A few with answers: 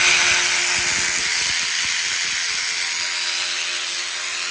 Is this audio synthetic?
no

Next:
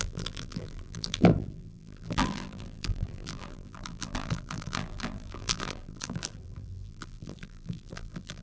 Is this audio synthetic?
yes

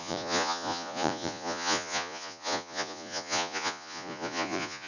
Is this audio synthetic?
yes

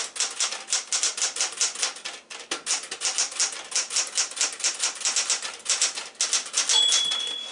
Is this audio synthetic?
no